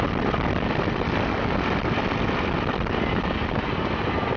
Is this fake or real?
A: fake